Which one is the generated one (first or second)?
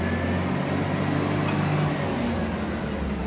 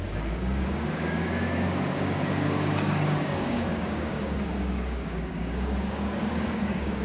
second